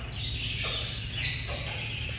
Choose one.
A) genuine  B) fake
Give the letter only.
A